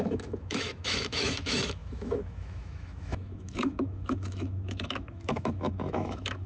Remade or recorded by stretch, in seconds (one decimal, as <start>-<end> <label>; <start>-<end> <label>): 0.0-6.5 remade

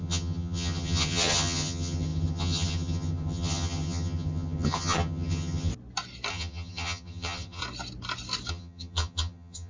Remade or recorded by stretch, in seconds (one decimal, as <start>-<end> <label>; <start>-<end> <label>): 0.0-5.7 remade; 5.7-6.3 recorded; 6.3-7.6 remade; 7.6-8.5 recorded; 8.5-9.7 remade

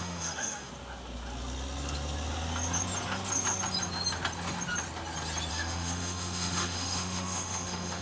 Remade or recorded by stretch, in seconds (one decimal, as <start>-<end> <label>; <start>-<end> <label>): 0.0-0.7 remade; 0.7-5.5 recorded; 5.5-8.0 remade